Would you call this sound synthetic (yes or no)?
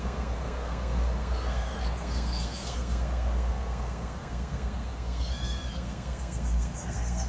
yes